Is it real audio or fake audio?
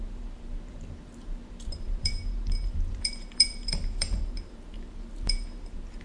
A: fake